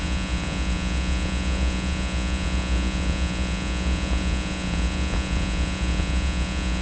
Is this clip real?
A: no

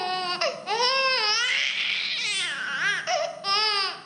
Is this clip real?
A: yes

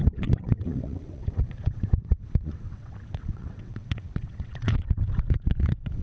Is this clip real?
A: no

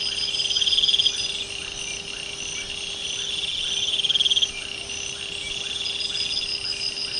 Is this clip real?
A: yes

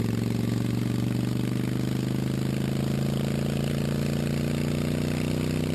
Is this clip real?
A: yes